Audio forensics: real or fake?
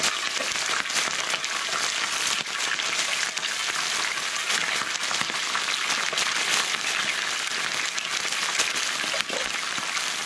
real